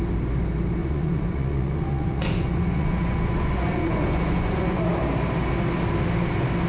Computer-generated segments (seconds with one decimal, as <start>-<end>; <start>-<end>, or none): 0.8-4.8